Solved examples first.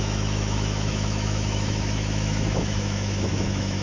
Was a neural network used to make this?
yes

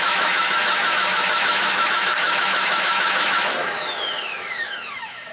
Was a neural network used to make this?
yes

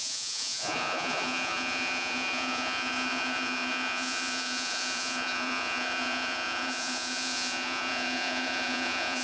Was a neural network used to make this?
yes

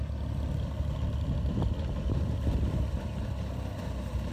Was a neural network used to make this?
no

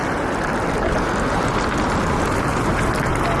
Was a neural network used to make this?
no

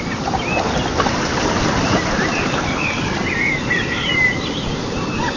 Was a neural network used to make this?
no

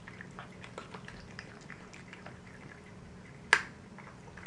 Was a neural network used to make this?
no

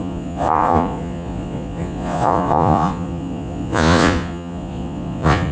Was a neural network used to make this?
yes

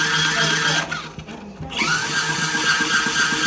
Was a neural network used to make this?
no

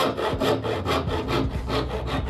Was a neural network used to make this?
no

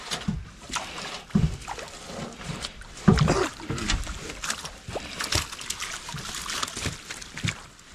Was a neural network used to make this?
yes